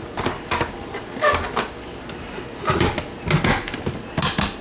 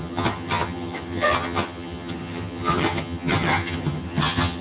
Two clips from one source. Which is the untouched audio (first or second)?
first